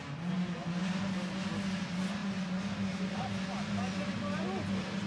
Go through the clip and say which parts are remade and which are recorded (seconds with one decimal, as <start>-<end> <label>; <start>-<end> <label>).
0.0-5.1 recorded